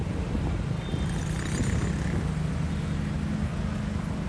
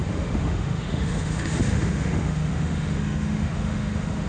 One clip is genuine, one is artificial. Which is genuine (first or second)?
first